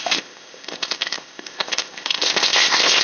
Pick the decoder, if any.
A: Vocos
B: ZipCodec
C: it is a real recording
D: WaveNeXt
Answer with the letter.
B